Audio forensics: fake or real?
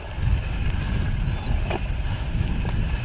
real